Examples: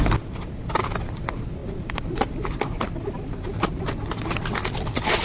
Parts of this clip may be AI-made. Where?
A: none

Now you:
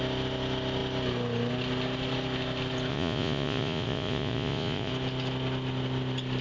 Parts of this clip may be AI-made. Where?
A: 2.9-4.9 (vocoder, Vocos)

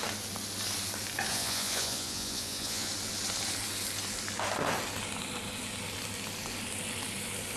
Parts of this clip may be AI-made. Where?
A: 1.3-2.9 (vocoder, Vocos)

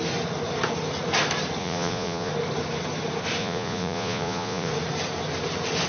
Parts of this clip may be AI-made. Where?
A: 1.6-2.3 (vocoder, Vocos); 3.4-4.7